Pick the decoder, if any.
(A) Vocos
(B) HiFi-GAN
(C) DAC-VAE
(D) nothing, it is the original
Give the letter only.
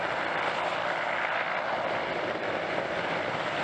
D